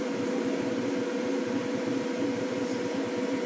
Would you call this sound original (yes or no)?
no